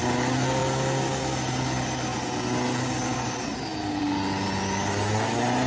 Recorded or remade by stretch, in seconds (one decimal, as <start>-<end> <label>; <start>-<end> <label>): 0.0-5.7 recorded